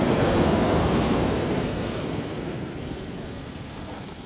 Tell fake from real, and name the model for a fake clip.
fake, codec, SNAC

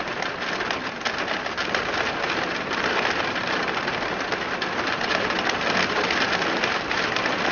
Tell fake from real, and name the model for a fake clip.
real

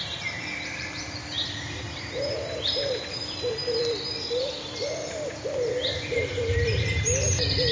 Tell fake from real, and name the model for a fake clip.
fake, vocoder, BigVGAN v2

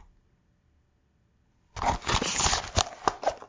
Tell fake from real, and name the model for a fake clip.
real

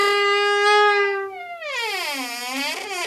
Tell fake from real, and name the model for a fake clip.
real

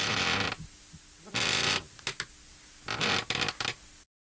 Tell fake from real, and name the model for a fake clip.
real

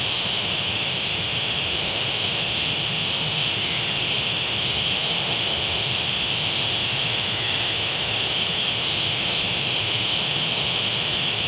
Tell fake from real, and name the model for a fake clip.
fake, autoencoder, DAC-VAE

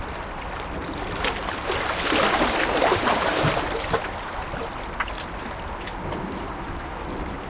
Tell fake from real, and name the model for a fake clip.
real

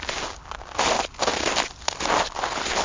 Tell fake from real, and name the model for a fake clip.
real